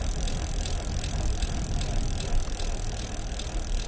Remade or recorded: recorded